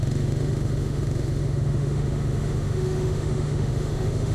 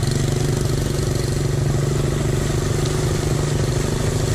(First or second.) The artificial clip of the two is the first